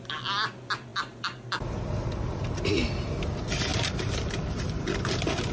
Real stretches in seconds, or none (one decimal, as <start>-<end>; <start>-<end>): 0.0-3.7; 4.3-5.5